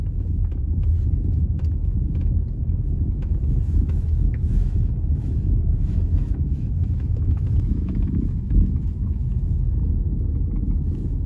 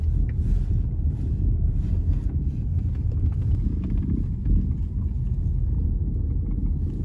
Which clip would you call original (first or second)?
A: second